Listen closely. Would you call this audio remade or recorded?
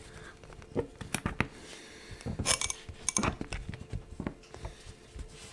recorded